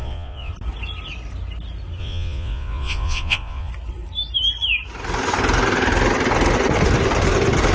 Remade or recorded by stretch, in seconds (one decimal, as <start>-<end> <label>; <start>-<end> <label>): 0.0-0.5 remade; 0.5-2.0 recorded; 2.0-3.7 remade; 3.7-7.7 recorded